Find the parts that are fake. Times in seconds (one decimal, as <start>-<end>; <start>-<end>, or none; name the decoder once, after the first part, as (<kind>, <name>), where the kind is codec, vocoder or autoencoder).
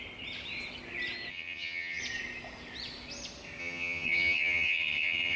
1.3-2.0 (vocoder, HiFi-GAN); 3.6-5.4